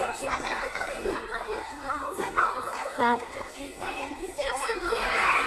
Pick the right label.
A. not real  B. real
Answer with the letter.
A